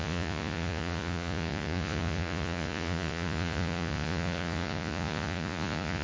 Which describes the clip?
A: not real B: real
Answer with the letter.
A